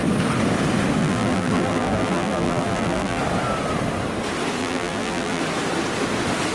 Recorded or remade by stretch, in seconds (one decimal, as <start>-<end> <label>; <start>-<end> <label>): 0.0-1.0 recorded; 1.0-3.2 remade; 3.2-4.6 recorded; 4.6-5.4 remade; 5.4-6.5 recorded